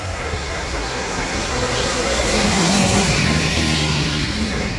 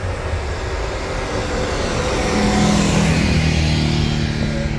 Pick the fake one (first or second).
first